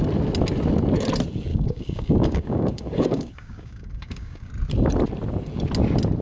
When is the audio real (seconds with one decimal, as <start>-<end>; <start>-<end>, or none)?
0.0-1.5; 4.5-6.2